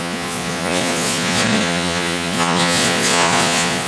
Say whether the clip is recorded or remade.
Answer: remade